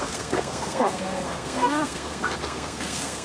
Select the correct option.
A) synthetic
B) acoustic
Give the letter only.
A